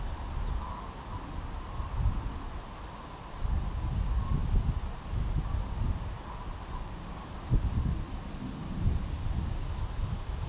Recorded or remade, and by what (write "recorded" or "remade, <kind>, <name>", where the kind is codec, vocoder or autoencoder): recorded